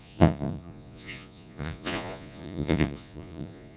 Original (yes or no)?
no